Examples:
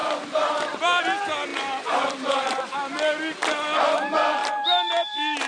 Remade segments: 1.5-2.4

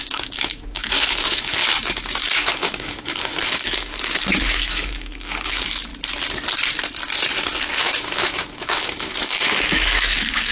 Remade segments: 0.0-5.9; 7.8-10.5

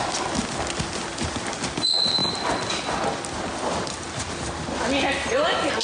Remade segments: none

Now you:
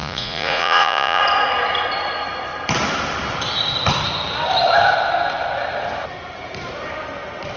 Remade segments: 0.0-1.2